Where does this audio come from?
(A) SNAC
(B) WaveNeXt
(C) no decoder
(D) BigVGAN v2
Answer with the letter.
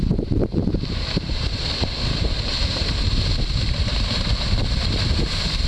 D